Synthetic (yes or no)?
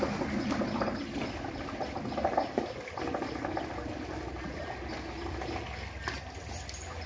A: no